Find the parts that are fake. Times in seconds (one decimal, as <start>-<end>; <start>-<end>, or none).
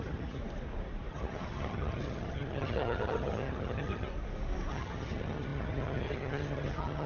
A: 0.0-0.4; 1.1-4.1; 4.7-7.1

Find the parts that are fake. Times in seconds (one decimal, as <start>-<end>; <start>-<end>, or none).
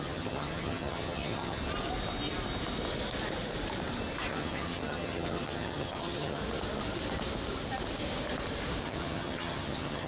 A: 0.0-1.6; 4.3-6.4; 8.8-10.1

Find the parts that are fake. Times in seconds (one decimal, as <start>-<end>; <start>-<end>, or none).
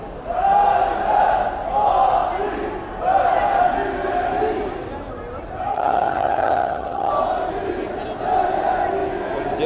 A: 5.7-7.1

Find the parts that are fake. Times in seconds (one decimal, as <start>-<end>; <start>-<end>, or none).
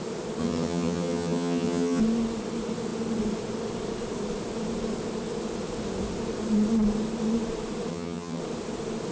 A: 0.4-2.0; 7.9-8.4